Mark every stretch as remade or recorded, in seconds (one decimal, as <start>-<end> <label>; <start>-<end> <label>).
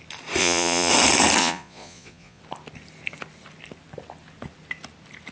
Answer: 0.0-0.4 recorded; 0.4-0.9 remade; 0.9-1.4 recorded; 1.4-2.4 remade; 2.4-5.3 recorded